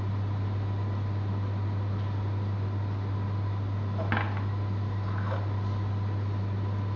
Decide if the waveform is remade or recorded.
recorded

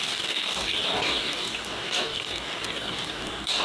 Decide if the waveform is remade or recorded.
remade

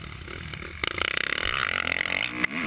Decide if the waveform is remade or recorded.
recorded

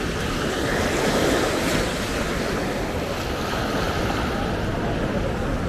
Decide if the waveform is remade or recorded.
recorded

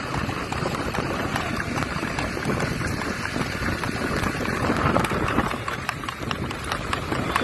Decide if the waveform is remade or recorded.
remade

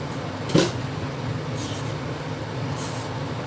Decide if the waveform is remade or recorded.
recorded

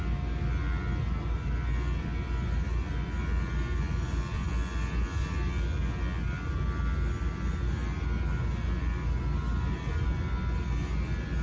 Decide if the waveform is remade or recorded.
recorded